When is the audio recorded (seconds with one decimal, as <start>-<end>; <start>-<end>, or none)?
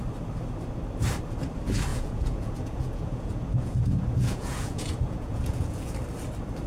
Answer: 0.0-1.9; 5.9-6.7